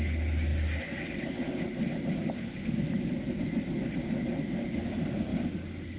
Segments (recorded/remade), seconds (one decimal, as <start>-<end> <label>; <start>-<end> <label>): 0.0-6.0 recorded